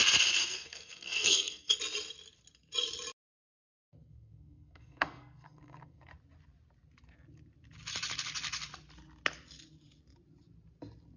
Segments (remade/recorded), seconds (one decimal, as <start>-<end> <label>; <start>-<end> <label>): 0.0-0.4 recorded; 0.4-1.7 remade; 1.7-3.4 recorded; 3.4-6.1 remade; 6.1-11.2 recorded